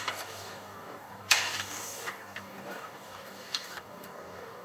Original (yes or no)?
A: no